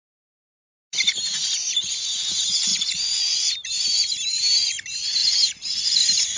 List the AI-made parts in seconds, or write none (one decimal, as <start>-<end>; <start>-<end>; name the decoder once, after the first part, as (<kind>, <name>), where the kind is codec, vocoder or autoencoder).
2.7-4.4 (vocoder, BigVGAN v2); 5.2-6.0